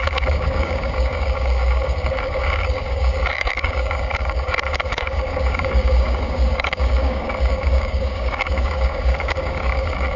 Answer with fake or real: fake